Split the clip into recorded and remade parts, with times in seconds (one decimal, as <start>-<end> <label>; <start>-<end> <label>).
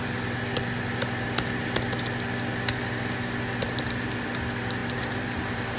0.0-4.8 recorded; 4.8-5.8 remade